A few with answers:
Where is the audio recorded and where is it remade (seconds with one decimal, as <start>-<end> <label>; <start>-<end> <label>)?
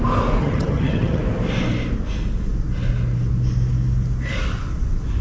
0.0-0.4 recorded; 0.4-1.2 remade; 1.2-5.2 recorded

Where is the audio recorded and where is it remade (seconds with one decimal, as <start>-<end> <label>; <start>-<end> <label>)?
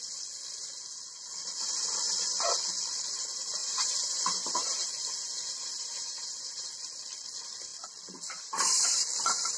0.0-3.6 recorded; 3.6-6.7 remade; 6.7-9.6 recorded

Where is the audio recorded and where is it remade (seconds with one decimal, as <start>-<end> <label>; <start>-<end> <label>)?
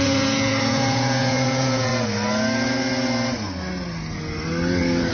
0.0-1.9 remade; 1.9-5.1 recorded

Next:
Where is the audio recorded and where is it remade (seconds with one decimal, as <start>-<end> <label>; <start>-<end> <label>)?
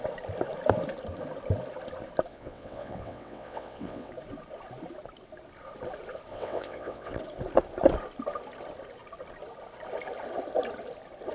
0.0-2.3 recorded; 2.3-4.1 remade; 4.1-6.3 recorded; 6.3-7.2 remade; 7.2-11.3 recorded